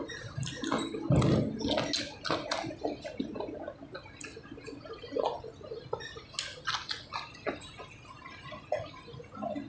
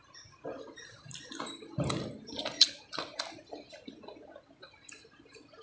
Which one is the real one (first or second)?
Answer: first